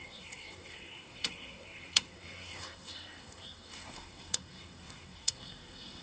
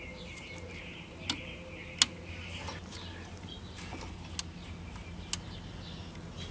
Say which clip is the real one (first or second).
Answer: second